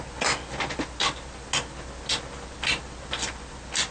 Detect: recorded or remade recorded